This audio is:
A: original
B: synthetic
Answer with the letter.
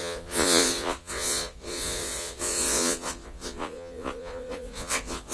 B